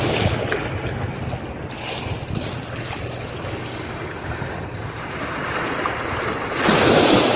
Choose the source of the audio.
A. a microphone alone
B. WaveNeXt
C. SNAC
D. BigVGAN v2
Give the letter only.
A